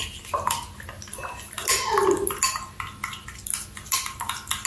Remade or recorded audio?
recorded